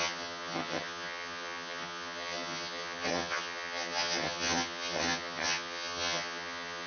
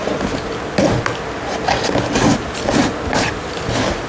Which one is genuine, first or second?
second